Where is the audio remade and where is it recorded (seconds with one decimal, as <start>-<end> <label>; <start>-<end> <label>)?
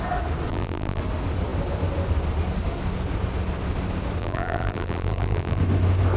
0.0-0.5 recorded; 0.5-1.0 remade; 1.0-4.2 recorded; 4.2-5.6 remade; 5.6-6.2 recorded